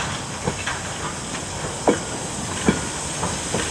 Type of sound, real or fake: real